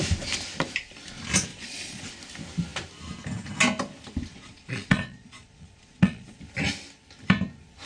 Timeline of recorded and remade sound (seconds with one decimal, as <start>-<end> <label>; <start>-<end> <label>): 0.0-1.5 recorded; 1.5-2.0 remade; 2.0-4.3 recorded; 4.3-6.4 remade; 6.4-7.9 recorded